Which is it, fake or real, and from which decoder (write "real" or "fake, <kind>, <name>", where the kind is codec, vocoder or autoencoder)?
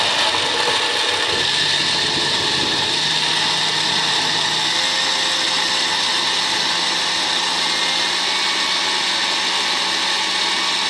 real